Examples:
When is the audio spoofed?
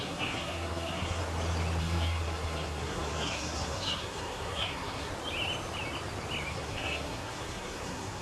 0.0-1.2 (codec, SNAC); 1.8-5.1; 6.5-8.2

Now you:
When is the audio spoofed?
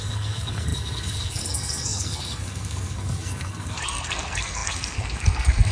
0.0-5.7 (codec, SNAC)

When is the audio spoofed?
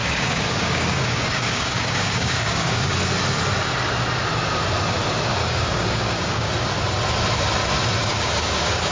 0.0-2.9 (codec, DAC); 5.4-6.5; 8.0-8.9